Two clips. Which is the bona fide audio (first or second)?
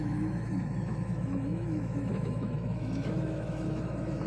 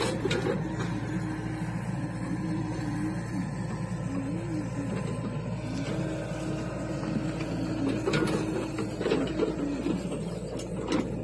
second